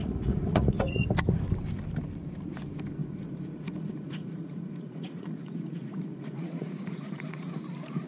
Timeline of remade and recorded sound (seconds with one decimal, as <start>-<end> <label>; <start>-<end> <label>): 0.0-1.1 remade; 1.1-3.0 recorded; 3.0-7.5 remade; 7.5-8.1 recorded